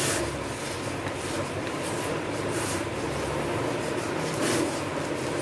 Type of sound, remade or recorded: recorded